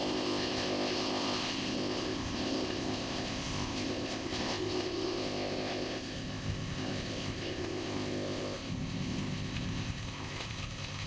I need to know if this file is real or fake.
fake